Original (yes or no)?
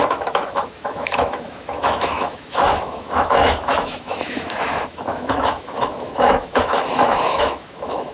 no